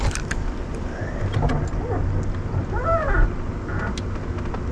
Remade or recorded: recorded